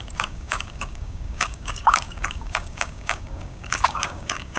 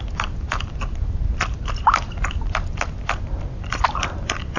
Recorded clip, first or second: second